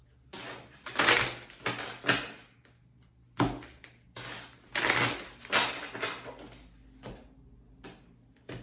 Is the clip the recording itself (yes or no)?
yes